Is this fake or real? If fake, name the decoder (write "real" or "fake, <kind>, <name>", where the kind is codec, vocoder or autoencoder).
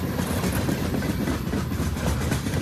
fake, vocoder, BigVGAN v2